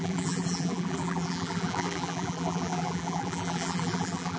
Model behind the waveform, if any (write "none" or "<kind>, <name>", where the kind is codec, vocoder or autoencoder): vocoder, BigVGAN v2